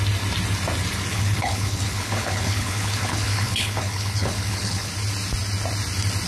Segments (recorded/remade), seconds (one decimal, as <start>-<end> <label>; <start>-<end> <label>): 0.0-1.1 recorded; 1.1-4.9 remade; 4.9-6.3 recorded

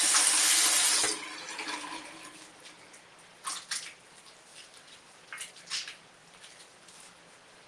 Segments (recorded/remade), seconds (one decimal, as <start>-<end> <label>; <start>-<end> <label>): 0.0-7.7 recorded

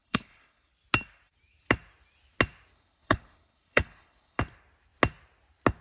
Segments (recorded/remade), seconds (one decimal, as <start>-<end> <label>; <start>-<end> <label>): 0.0-0.7 remade; 0.7-2.7 recorded; 2.7-4.4 remade; 4.4-5.8 recorded

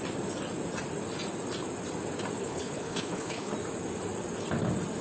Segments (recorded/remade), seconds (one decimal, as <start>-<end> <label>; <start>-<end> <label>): 0.0-2.4 recorded; 2.4-3.5 remade; 3.5-5.0 recorded

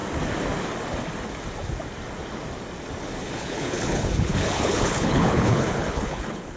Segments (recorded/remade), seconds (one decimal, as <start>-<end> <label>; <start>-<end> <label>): 0.0-3.2 recorded; 3.2-6.6 remade